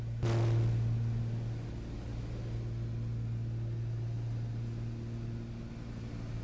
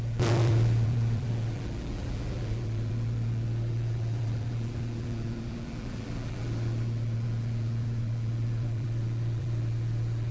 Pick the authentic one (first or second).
first